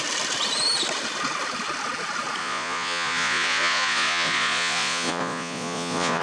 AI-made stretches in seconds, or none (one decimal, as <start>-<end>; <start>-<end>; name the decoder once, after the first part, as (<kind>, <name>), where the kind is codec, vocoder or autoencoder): 2.4-6.2 (vocoder, Vocos)